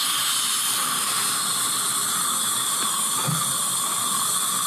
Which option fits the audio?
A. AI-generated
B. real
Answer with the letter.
B